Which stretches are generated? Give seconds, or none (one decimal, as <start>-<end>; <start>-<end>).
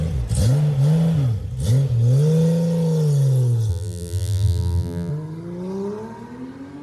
3.7-5.1